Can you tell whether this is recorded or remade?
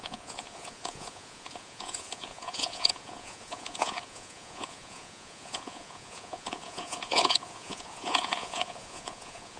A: remade